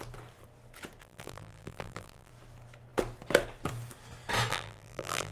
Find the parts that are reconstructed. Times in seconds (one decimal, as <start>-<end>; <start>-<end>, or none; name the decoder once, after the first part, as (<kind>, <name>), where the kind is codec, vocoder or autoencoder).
1.0-2.3 (vocoder, BigVGAN v2); 4.5-5.3